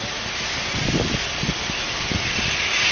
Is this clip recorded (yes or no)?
yes